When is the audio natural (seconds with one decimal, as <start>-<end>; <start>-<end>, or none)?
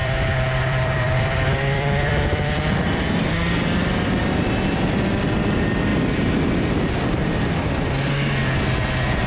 3.3-5.9; 6.8-9.3